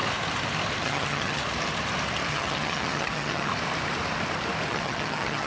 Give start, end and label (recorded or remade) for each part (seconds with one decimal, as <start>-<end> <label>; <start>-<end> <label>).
0.0-0.8 recorded; 0.8-1.4 remade; 1.4-2.3 recorded; 2.3-3.5 remade; 3.5-4.7 recorded; 4.7-5.5 remade